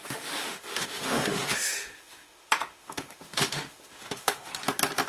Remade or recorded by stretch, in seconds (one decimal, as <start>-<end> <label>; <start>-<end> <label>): 0.0-4.5 remade; 4.5-5.1 recorded

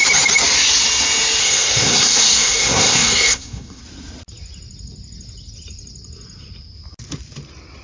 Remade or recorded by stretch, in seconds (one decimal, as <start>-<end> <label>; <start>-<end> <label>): 0.0-1.4 recorded; 1.4-3.8 remade; 3.8-7.8 recorded

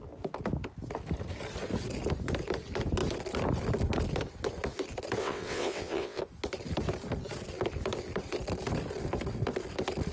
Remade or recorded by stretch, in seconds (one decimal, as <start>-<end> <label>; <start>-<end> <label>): 0.0-5.2 recorded; 5.2-6.2 remade; 6.2-10.1 recorded

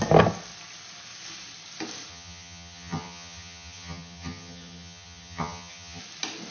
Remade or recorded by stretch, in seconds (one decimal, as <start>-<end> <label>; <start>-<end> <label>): 0.0-2.1 recorded; 2.1-6.0 remade; 6.0-6.5 recorded

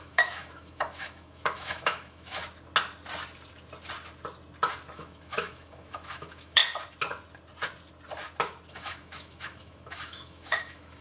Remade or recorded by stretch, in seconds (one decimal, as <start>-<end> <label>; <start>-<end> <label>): 0.0-2.4 remade; 2.4-4.9 recorded; 4.9-6.6 remade; 6.6-8.7 recorded; 8.7-11.0 remade

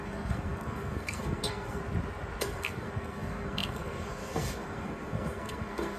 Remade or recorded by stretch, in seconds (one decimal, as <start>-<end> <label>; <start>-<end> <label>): 0.0-1.8 remade; 1.8-2.4 recorded; 2.4-6.0 remade

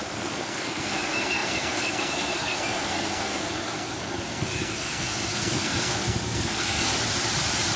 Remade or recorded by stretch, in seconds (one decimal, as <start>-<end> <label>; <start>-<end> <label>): 0.0-6.9 remade; 6.9-7.8 recorded

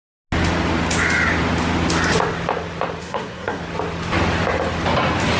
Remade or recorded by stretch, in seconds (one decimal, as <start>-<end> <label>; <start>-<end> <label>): 0.0-3.0 recorded; 3.0-3.6 remade; 3.6-5.4 recorded